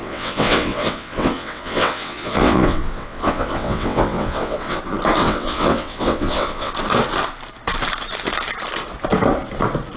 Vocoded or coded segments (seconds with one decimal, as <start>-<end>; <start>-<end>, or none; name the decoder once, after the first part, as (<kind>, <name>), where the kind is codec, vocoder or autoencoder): 0.0-4.8 (vocoder, WaveNeXt); 5.2-6.7